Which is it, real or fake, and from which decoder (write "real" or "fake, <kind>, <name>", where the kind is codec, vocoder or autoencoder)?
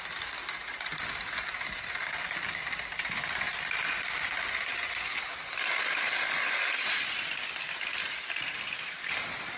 real